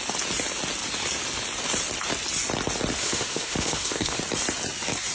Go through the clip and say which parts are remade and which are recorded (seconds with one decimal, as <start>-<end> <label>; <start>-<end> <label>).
0.0-3.0 recorded; 3.0-4.2 remade; 4.2-5.1 recorded